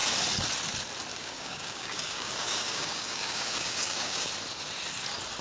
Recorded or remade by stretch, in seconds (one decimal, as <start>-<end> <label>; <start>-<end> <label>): 0.0-1.1 recorded; 1.1-4.3 remade; 4.3-5.4 recorded